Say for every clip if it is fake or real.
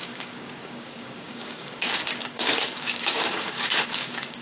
fake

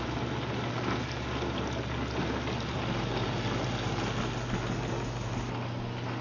real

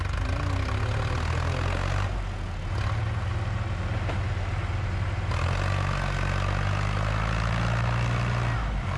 real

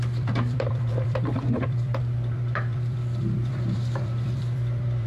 fake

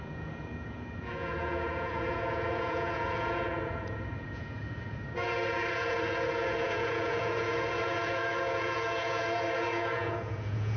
fake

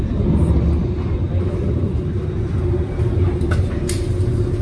real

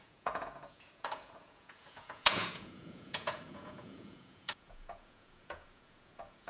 fake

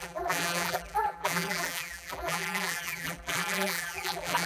fake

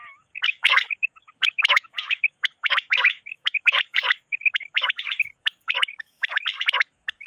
fake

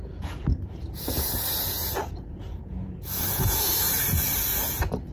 fake